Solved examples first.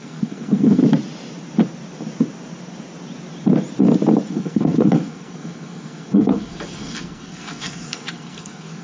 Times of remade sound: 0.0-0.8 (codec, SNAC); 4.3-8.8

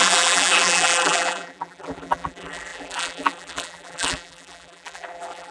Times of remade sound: 0.0-5.5 (vocoder, BigVGAN v2)